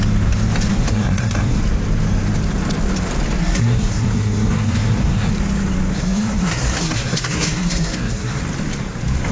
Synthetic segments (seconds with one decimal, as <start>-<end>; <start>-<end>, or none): 0.7-1.6; 3.4-5.3; 5.9-8.4